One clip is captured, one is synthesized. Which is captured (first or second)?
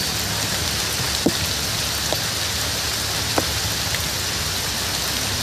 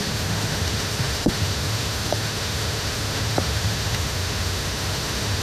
first